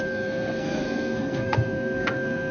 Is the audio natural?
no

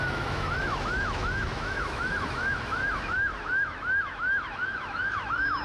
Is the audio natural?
no